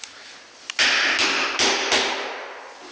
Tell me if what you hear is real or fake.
real